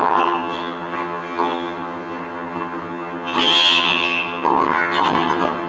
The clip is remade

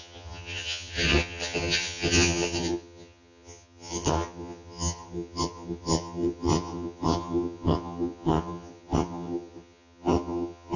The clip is remade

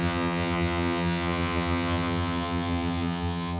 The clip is remade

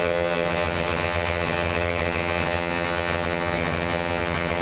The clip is remade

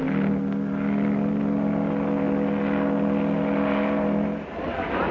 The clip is recorded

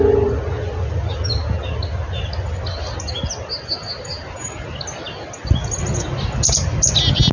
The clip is recorded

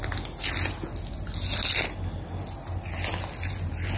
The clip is recorded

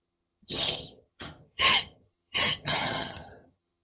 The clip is remade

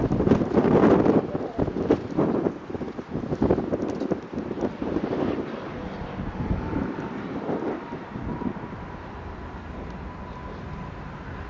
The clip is recorded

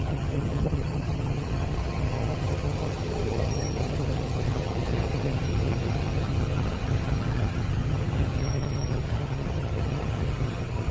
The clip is remade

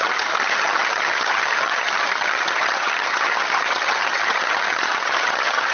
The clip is remade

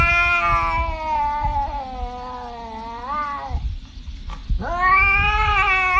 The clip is recorded